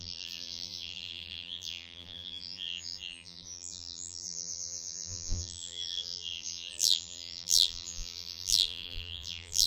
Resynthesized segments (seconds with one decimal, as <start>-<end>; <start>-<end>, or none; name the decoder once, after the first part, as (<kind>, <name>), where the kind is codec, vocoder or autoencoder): 0.0-9.7 (vocoder, BigVGAN v2)